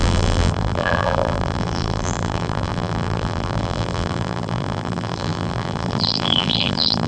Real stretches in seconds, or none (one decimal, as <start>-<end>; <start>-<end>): none